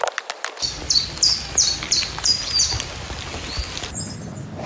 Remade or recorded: remade